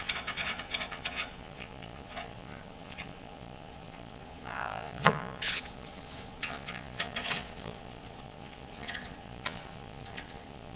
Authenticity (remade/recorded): remade